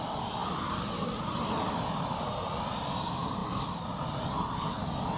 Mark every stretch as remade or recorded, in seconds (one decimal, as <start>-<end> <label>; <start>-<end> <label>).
0.0-5.2 recorded